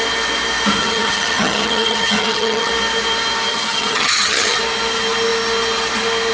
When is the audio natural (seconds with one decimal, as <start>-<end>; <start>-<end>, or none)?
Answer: 0.0-0.8; 2.7-3.5; 4.6-6.3